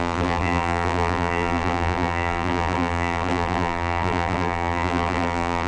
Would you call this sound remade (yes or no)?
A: yes